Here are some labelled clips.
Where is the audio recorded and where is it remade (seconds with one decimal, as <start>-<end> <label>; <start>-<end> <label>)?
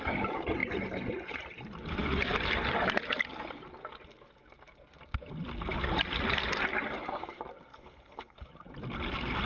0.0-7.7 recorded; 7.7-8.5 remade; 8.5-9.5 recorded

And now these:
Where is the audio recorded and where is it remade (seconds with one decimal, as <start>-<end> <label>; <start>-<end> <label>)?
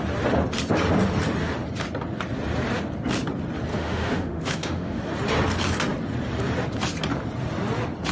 0.0-3.7 recorded; 3.7-5.0 remade; 5.0-8.1 recorded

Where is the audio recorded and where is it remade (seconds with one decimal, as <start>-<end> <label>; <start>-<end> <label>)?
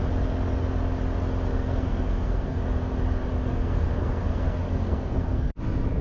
0.0-1.5 recorded; 1.5-2.6 remade; 2.6-3.4 recorded; 3.4-5.5 remade; 5.5-6.0 recorded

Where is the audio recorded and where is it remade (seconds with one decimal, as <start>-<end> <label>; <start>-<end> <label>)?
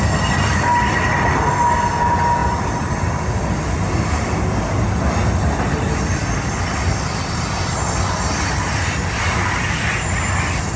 0.0-2.4 recorded; 2.4-2.9 remade; 2.9-10.8 recorded